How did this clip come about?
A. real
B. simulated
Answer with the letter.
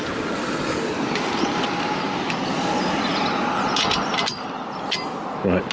A